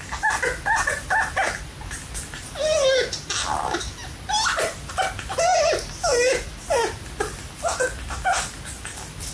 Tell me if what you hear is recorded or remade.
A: recorded